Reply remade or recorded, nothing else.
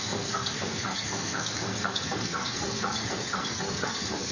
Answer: remade